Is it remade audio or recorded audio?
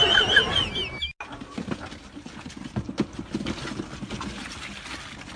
recorded